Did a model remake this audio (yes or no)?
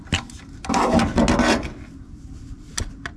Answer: no